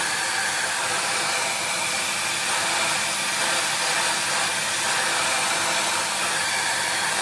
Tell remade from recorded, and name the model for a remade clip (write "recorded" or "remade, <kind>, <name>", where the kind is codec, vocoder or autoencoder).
recorded